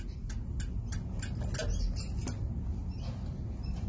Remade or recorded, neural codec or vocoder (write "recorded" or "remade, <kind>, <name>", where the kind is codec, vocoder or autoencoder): recorded